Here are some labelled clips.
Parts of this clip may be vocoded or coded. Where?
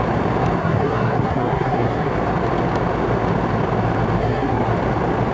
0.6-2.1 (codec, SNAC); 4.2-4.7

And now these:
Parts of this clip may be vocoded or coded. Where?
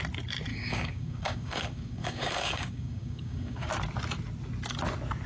0.5-3.7 (codec, DAC)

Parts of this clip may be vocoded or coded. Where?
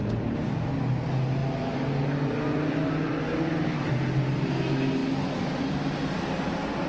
none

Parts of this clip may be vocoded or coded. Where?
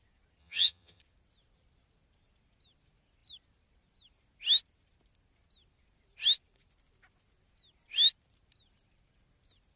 0.4-1.0 (vocoder, HiFi-GAN)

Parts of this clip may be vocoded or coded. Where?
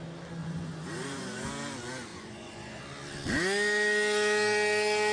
0.4-1.5 (vocoder, Vocos); 2.1-2.8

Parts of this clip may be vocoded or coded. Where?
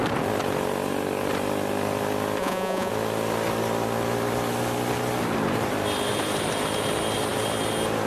2.4-2.9 (vocoder, Vocos)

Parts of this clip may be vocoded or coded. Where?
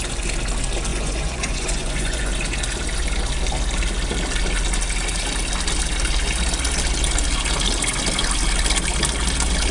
0.9-2.3 (vocoder, Vocos)